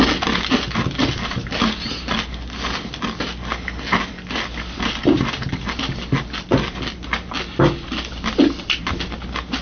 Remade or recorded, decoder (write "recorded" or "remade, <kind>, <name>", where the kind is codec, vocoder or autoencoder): recorded